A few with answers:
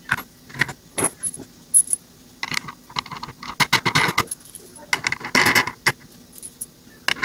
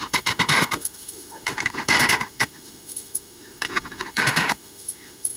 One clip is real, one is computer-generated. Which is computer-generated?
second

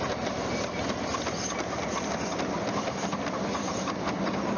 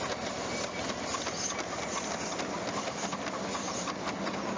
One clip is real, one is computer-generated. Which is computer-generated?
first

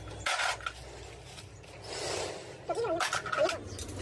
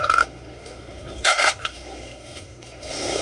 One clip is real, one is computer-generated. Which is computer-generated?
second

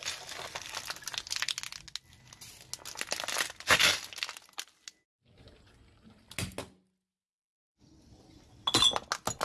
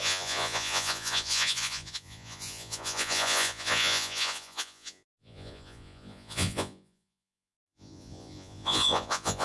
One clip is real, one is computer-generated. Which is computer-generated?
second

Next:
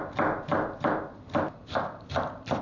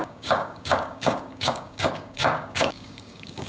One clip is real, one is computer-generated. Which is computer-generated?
second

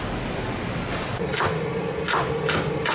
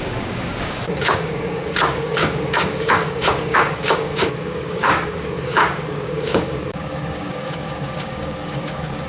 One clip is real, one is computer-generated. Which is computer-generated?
second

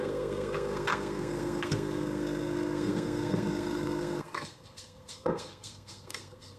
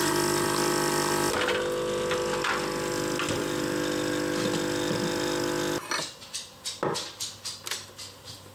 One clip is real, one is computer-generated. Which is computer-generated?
first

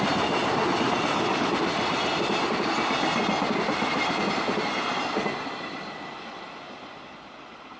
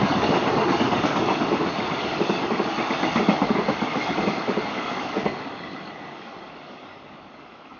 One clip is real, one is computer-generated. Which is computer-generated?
second